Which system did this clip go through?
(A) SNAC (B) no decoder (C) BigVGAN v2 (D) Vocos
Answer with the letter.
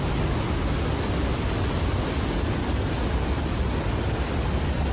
B